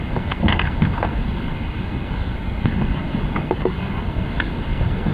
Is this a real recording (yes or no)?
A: no